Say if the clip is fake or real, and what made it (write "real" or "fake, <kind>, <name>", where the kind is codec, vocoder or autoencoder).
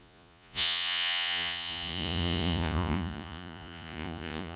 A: fake, vocoder, Vocos